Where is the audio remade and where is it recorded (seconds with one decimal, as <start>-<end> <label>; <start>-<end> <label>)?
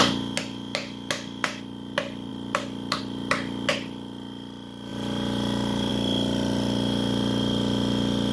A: 0.0-8.3 recorded